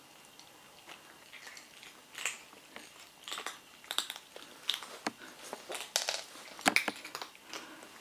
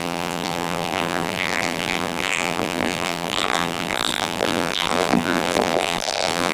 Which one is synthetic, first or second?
second